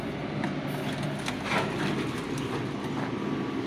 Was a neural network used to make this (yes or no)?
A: no